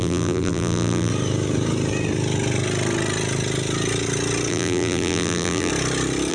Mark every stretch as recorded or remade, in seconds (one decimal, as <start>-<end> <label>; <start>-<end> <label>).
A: 0.0-1.1 remade; 1.1-4.5 recorded; 4.5-5.7 remade; 5.7-6.3 recorded